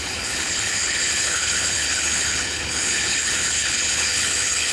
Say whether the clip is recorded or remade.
remade